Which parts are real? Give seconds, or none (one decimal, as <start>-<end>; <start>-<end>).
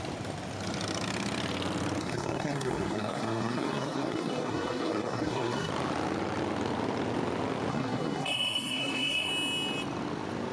0.0-2.0; 5.7-7.7; 9.3-10.5